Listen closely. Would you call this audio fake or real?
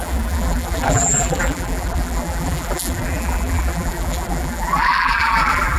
fake